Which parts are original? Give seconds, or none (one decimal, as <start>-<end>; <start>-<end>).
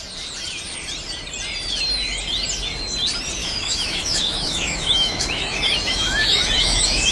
0.0-3.4